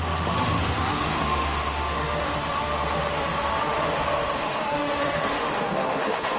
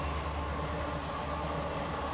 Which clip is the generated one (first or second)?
first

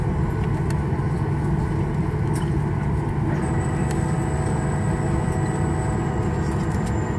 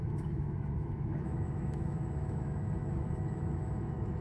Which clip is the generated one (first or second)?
second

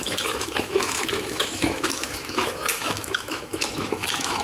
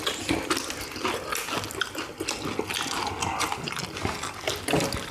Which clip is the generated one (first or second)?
first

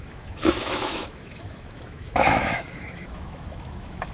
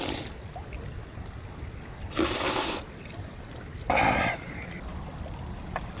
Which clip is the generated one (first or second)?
first